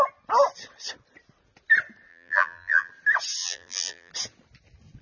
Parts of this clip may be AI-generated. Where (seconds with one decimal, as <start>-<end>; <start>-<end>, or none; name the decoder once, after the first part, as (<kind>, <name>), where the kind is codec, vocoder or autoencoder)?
2.1-2.9 (vocoder, BigVGAN v2); 3.4-4.1